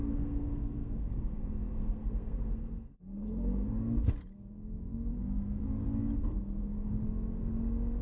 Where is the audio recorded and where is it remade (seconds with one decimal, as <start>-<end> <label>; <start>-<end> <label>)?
0.0-3.7 remade; 3.7-5.1 recorded; 5.1-5.6 remade; 5.6-6.2 recorded; 6.2-6.9 remade; 6.9-8.0 recorded